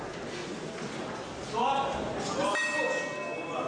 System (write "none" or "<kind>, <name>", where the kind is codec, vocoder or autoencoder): none